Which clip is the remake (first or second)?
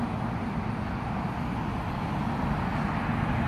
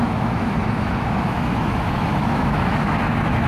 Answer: second